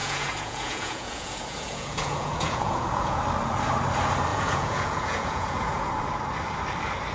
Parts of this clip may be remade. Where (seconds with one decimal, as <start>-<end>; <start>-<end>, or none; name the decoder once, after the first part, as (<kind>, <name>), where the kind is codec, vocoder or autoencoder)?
0.0-3.2 (vocoder, Vocos); 4.3-5.9